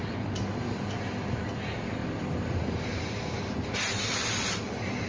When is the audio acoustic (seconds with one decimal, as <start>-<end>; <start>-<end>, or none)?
0.8-2.0